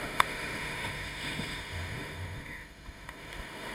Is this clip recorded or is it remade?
remade